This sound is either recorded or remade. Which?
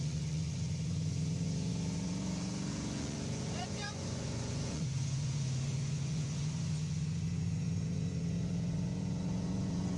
remade